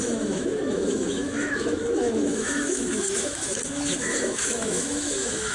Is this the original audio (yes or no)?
no